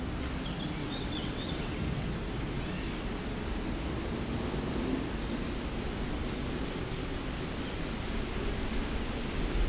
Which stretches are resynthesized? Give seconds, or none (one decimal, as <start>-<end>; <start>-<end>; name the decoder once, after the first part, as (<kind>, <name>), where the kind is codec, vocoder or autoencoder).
0.8-2.1 (vocoder, WaveNeXt)